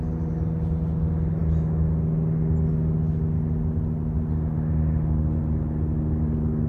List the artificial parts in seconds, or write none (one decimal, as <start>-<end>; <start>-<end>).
none